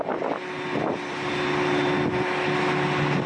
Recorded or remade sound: recorded